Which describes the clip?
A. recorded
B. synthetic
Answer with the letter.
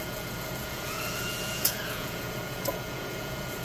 B